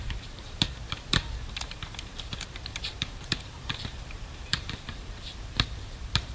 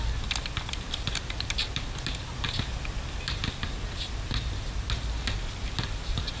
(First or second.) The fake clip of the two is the first